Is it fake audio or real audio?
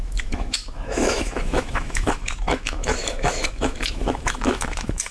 fake